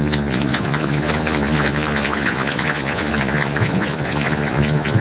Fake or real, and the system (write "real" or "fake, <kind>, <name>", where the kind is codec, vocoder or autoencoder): fake, vocoder, Vocos